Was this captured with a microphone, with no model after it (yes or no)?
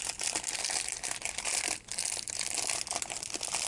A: yes